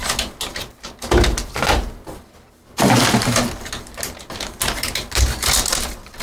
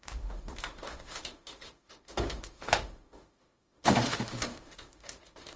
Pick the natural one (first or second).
first